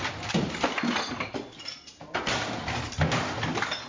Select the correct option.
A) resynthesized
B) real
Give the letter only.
B